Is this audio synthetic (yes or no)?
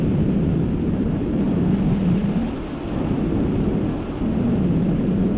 yes